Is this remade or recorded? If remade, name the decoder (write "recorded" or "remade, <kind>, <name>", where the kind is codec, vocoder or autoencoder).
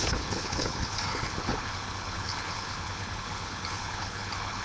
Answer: remade, codec, HILCodec